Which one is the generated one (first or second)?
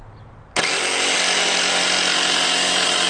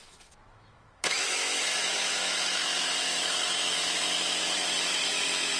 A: second